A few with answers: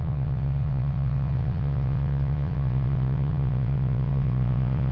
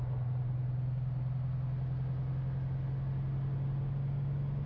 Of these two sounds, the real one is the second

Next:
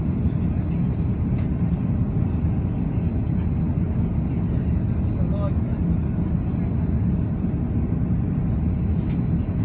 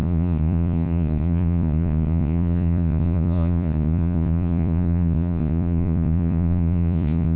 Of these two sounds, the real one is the first